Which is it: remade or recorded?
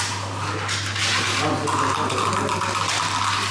recorded